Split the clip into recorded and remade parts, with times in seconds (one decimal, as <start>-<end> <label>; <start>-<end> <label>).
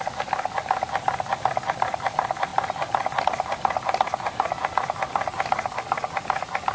0.0-6.7 remade